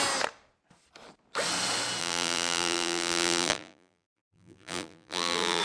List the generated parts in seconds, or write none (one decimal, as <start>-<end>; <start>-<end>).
2.0-5.6